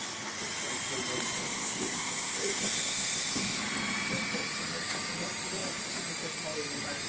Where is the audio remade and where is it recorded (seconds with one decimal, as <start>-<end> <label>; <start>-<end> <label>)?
0.0-1.4 recorded; 1.4-3.6 remade; 3.6-7.1 recorded